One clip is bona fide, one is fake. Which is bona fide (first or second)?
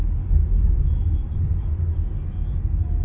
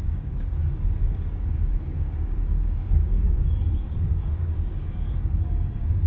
first